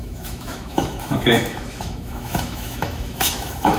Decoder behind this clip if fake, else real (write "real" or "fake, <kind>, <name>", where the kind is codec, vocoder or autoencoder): fake, autoencoder, DAC-VAE